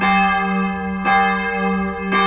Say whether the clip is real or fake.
real